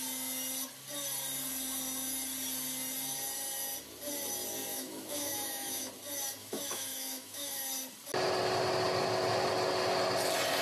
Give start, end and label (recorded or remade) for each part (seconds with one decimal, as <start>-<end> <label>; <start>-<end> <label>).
0.0-4.7 recorded; 4.7-5.9 remade; 5.9-6.4 recorded; 6.4-7.6 remade; 7.6-10.6 recorded